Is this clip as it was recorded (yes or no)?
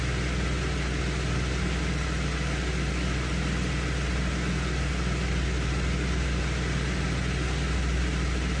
yes